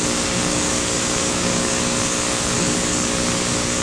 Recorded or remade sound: remade